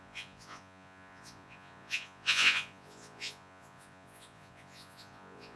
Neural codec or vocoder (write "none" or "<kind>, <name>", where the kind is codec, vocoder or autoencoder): vocoder, Vocos